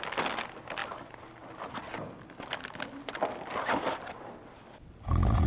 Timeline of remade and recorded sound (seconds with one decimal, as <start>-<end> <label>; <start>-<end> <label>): 0.0-5.5 recorded